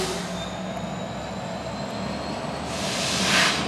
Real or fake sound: real